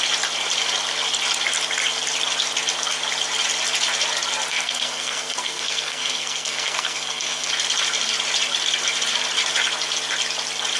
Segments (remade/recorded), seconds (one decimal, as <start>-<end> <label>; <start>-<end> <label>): 0.0-4.5 recorded; 4.5-7.5 remade; 7.5-10.8 recorded